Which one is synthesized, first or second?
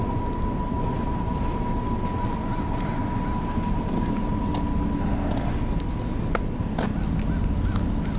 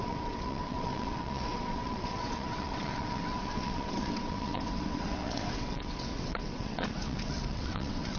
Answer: second